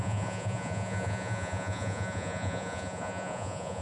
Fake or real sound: fake